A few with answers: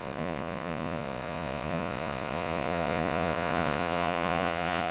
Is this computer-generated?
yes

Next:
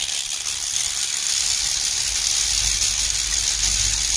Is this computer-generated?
no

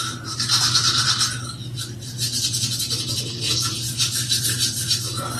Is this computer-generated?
no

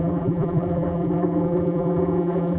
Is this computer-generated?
yes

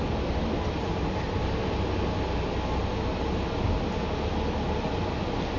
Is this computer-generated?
no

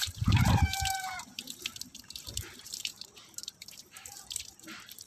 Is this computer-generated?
yes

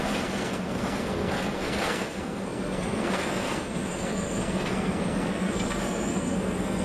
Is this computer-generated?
yes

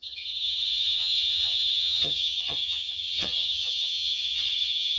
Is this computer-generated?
yes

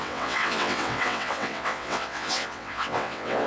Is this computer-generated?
yes